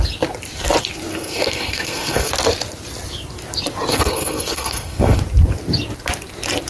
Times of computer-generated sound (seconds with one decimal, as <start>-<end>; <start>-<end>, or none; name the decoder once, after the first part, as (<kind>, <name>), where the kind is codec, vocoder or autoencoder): 1.1-2.3 (codec, SNAC); 3.9-5.2